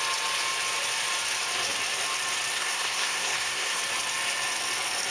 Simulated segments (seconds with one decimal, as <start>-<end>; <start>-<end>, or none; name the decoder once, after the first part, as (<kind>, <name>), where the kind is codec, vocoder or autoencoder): 2.5-3.8 (codec, SNAC)